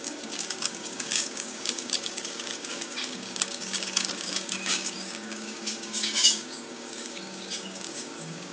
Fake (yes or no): yes